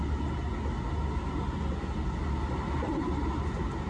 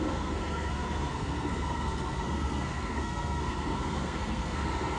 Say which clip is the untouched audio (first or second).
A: first